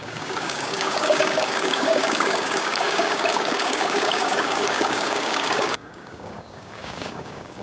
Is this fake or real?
fake